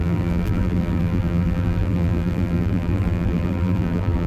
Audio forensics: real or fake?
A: fake